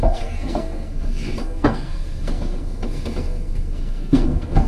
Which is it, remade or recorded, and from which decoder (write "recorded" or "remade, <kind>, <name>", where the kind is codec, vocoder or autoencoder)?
remade, codec, SNAC